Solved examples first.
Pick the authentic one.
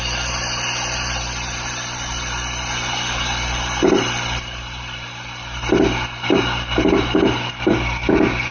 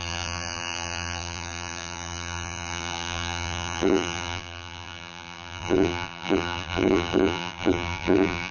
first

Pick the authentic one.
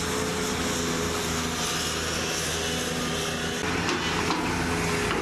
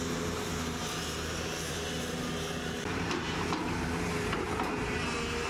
first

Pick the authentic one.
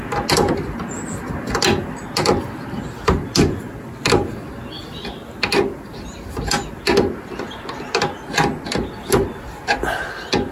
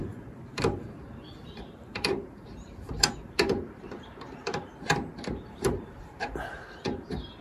first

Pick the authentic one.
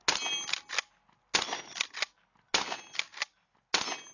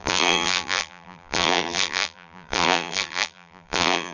first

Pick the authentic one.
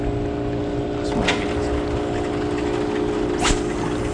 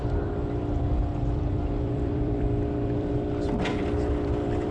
first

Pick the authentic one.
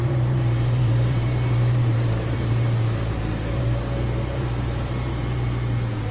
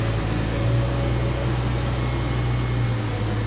second